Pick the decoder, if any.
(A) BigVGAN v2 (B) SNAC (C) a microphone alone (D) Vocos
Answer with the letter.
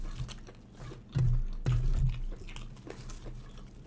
C